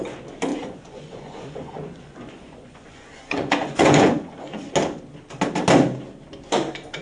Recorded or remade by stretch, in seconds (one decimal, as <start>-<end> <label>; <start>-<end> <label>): 0.0-0.5 recorded; 0.5-4.7 remade; 4.7-7.0 recorded